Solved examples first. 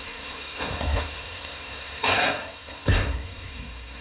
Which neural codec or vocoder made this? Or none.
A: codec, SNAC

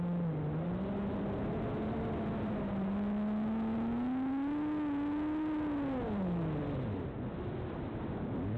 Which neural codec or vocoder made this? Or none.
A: none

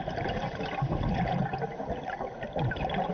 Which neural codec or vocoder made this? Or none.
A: none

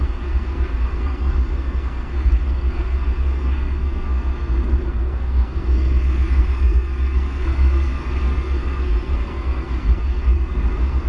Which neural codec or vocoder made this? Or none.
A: codec, SNAC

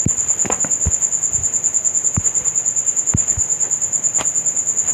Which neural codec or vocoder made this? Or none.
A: none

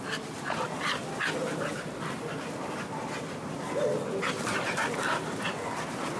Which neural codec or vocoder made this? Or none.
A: none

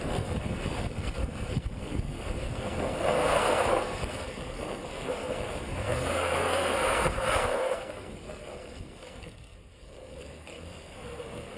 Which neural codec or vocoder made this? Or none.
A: codec, SNAC